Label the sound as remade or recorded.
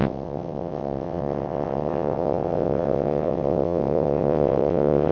remade